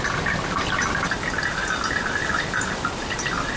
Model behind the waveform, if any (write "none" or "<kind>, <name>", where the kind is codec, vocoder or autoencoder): none